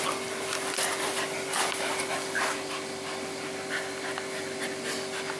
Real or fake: real